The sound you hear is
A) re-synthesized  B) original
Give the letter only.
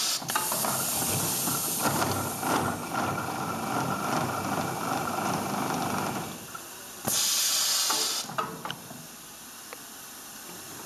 B